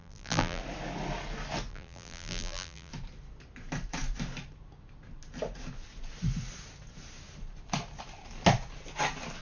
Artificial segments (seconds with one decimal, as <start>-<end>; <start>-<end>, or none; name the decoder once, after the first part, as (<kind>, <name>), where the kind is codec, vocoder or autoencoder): 0.0-0.6 (vocoder, BigVGAN v2); 1.7-2.9